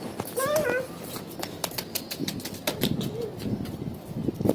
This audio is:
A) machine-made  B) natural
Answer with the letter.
B